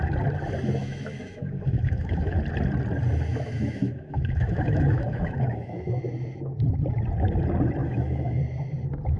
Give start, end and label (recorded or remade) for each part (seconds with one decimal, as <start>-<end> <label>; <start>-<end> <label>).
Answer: 0.0-0.8 recorded; 0.8-2.4 remade; 2.4-3.3 recorded; 3.3-6.0 remade; 6.0-7.8 recorded; 7.8-8.4 remade; 8.4-9.2 recorded